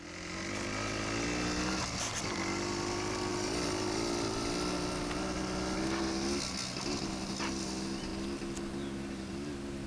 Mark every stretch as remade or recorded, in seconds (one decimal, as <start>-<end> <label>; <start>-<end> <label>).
0.0-9.9 recorded